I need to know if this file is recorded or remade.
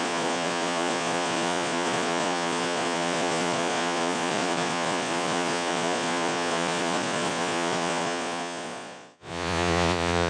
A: remade